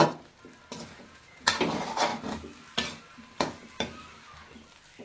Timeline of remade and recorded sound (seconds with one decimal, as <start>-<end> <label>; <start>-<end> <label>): 0.0-0.9 recorded; 0.9-1.6 remade; 1.6-5.0 recorded